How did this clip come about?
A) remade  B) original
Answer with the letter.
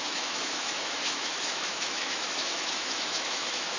A